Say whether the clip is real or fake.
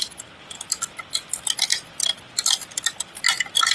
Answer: real